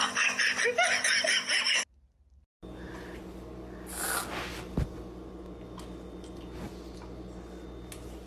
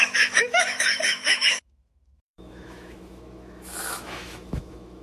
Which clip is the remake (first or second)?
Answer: second